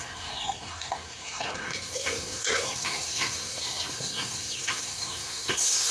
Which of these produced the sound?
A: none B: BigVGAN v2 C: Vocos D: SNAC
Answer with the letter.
D